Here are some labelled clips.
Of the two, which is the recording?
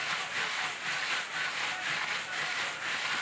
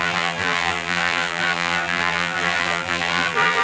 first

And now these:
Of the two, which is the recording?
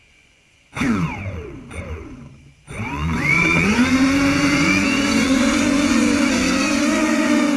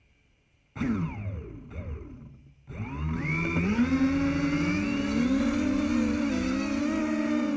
second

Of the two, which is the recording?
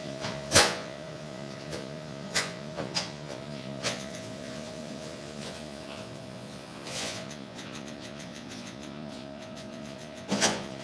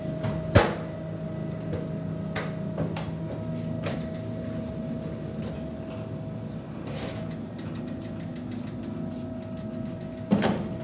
second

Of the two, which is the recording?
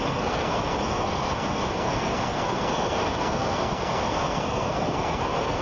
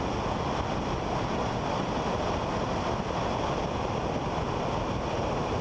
second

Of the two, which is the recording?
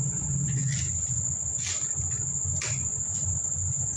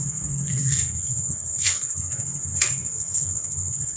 first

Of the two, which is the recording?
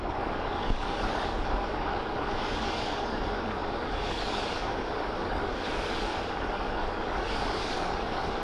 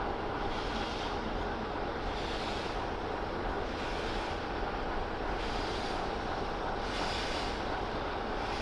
second